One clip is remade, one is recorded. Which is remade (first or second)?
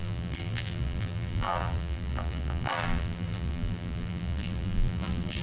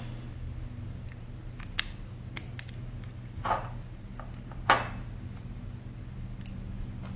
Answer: first